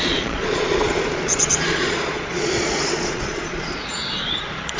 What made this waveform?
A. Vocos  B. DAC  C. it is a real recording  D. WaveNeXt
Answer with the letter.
A